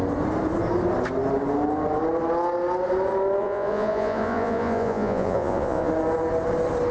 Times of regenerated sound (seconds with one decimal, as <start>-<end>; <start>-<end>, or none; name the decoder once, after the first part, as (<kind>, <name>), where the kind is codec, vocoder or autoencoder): 3.4-5.9 (vocoder, Vocos)